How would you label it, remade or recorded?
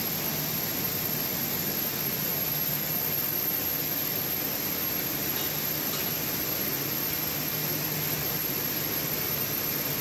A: recorded